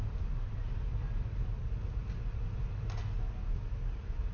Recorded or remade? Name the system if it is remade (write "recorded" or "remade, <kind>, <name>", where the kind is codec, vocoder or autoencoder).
recorded